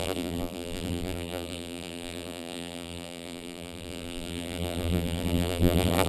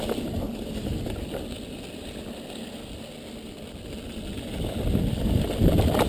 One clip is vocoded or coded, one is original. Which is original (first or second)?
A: second